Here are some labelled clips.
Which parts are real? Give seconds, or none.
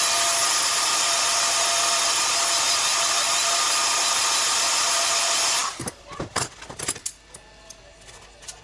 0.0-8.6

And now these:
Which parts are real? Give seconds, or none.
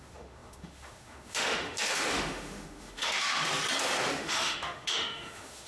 3.5-4.1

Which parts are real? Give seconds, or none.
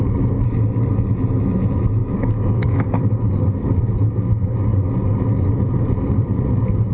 0.0-2.0; 3.0-6.9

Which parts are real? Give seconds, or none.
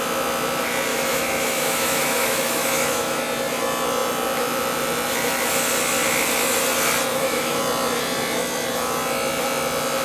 0.0-0.9; 3.2-7.1; 7.6-10.0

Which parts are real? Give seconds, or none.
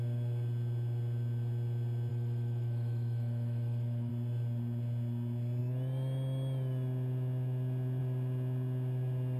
0.0-2.1; 4.1-9.4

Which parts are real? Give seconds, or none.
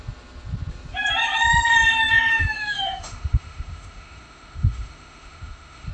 0.0-2.3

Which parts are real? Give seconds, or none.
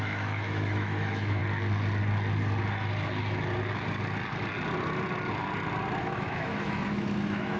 1.4-6.0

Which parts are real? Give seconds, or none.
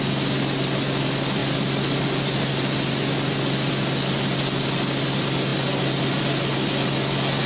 0.0-7.5